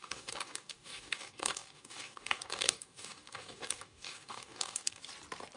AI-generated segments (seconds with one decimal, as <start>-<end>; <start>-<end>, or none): 0.0-5.0

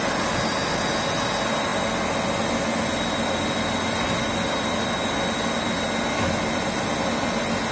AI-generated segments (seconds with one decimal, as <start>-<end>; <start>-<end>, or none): none

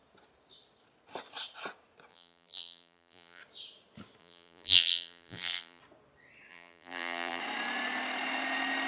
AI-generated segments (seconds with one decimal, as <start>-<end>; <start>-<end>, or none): 2.1-3.4; 4.2-5.8; 6.5-7.4

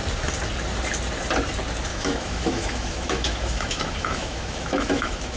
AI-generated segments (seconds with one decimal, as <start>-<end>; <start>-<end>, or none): 1.9-5.4

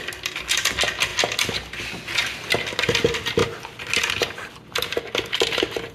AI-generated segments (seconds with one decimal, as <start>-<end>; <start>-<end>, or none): none

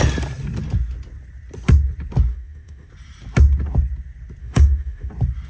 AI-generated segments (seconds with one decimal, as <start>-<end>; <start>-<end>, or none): 2.3-2.9; 4.4-5.1